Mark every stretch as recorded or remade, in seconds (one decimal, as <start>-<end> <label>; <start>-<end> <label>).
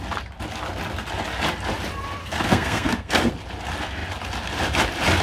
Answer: 0.0-2.2 recorded; 2.2-3.3 remade; 3.3-5.2 recorded